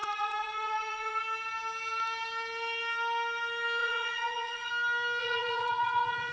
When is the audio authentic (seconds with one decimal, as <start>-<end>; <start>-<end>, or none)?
1.2-3.8; 4.7-5.2